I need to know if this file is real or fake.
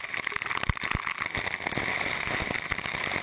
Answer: real